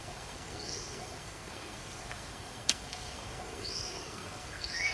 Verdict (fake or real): fake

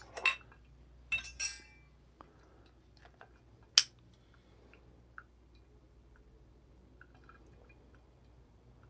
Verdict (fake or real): real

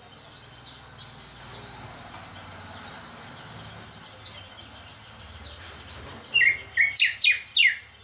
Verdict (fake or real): real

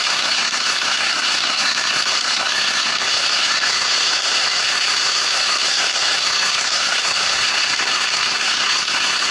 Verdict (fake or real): fake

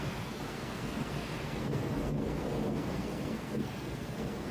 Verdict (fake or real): fake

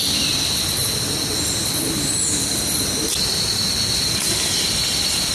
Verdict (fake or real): real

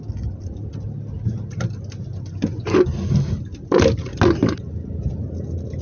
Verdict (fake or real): real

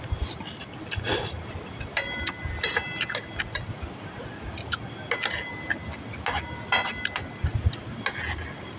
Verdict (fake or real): real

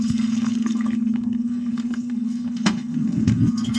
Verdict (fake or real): fake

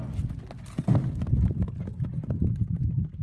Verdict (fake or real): real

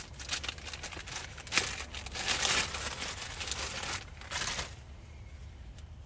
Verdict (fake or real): real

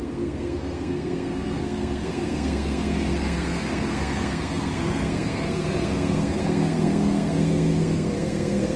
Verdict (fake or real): fake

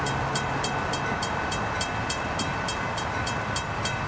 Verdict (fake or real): real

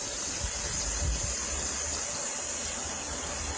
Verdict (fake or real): real